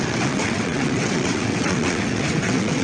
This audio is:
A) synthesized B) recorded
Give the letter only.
A